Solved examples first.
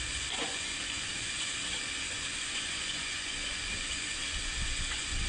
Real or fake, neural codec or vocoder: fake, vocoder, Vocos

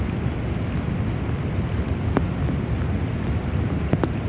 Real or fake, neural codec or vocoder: real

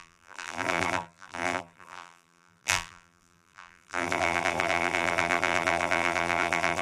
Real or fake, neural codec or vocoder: fake, vocoder, BigVGAN v2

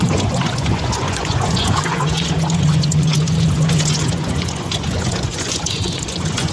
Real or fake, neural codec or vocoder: fake, vocoder, Vocos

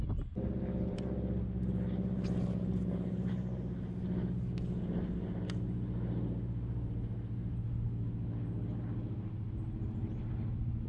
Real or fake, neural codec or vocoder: real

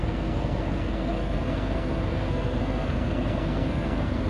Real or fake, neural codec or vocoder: fake, codec, SNAC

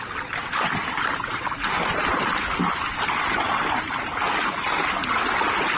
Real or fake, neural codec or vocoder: real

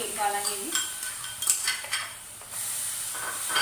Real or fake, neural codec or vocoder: fake, vocoder, BigVGAN v2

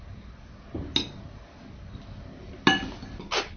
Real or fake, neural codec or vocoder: real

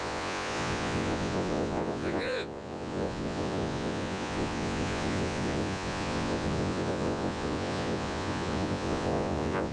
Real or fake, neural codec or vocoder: fake, vocoder, Vocos